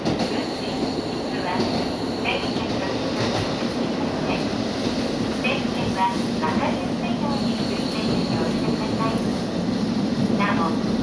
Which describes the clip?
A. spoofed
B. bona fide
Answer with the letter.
B